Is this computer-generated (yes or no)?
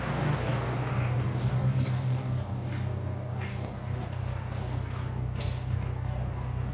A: yes